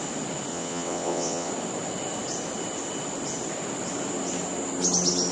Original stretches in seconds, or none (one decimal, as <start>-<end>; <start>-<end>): 0.0-0.5; 1.5-5.3

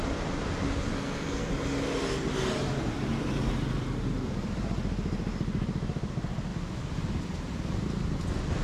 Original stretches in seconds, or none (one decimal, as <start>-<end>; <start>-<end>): 0.0-0.9; 1.5-8.6

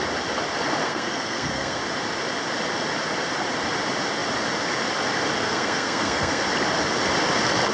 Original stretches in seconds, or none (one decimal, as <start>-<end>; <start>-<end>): 0.0-0.8; 1.8-5.4; 6.4-7.7

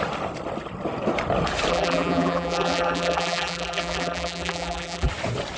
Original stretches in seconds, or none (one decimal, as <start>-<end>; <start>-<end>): 0.0-1.7; 5.1-5.6

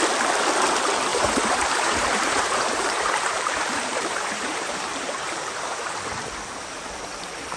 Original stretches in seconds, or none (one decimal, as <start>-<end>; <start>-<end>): 0.0-1.1; 5.4-7.6

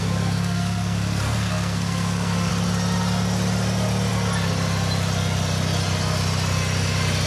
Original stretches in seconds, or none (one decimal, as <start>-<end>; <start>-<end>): 2.5-7.3